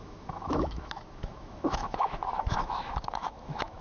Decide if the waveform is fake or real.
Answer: fake